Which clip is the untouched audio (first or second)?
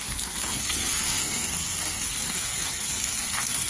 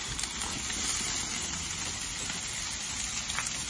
second